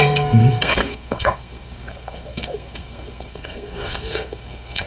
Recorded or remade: remade